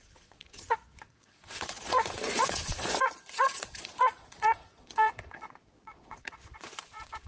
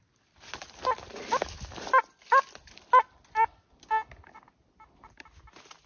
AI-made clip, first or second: first